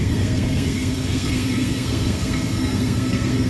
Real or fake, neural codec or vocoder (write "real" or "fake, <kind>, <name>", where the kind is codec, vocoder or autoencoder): fake, codec, SNAC